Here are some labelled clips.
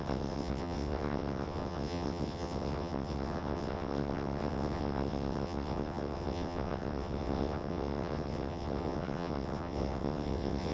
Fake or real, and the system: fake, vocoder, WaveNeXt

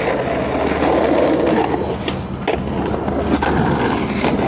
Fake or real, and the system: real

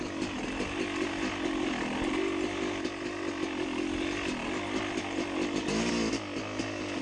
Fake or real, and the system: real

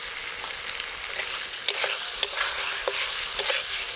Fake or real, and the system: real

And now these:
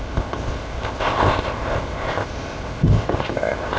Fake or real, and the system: fake, codec, ZipCodec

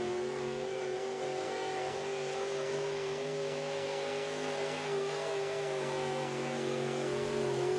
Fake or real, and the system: fake, codec, SNAC